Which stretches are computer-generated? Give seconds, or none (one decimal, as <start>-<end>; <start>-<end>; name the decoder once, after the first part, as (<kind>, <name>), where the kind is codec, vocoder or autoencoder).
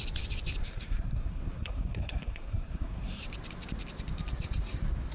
0.6-3.2 (codec, SNAC)